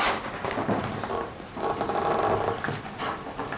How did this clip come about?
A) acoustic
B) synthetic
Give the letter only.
A